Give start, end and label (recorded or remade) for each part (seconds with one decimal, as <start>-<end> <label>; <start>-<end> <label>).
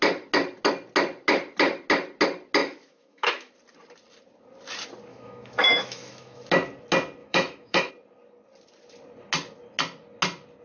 0.0-2.6 recorded; 2.6-3.5 remade; 3.5-5.1 recorded; 5.1-6.4 remade; 6.4-7.2 recorded; 7.2-7.9 remade; 7.9-10.6 recorded